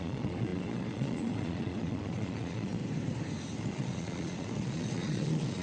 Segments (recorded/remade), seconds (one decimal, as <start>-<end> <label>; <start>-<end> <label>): 0.0-2.8 remade; 2.8-3.6 recorded; 3.6-5.6 remade